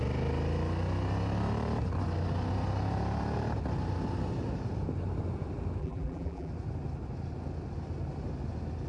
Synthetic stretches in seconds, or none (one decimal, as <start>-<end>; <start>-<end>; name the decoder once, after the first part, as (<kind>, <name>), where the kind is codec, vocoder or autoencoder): 5.8-6.5 (vocoder, BigVGAN v2)